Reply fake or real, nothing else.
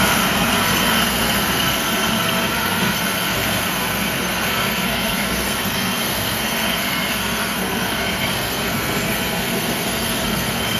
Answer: fake